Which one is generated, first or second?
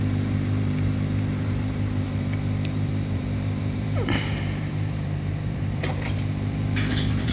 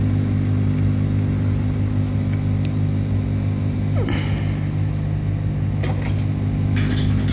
first